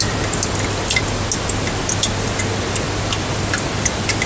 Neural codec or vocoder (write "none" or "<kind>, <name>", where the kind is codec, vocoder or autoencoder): none